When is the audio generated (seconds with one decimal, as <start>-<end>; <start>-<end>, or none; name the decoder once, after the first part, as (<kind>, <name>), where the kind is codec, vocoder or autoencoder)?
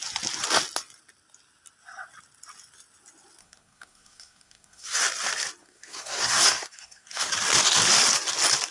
3.4-5.0 (codec, SNAC); 5.6-7.3